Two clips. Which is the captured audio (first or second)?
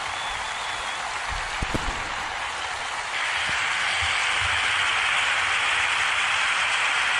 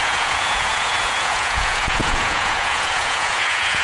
first